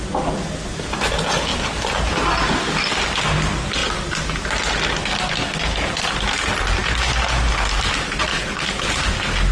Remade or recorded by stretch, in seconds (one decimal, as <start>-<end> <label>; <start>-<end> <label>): 0.0-8.3 recorded; 8.3-9.0 remade; 9.0-9.5 recorded